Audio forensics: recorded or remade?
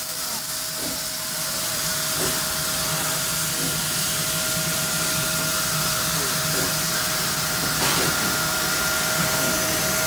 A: recorded